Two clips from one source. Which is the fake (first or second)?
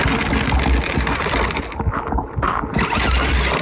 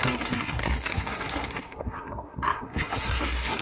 second